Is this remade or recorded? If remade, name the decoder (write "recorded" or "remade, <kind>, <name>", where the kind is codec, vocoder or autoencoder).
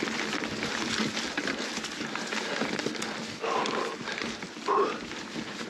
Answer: recorded